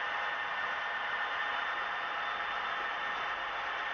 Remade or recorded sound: recorded